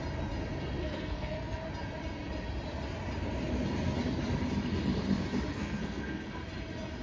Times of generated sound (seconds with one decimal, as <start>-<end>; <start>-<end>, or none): 0.8-1.6; 5.5-6.3